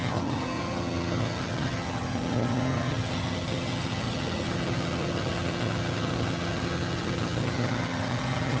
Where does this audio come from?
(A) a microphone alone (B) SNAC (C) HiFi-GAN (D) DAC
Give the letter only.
C